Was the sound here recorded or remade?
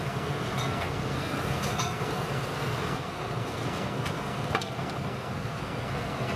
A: remade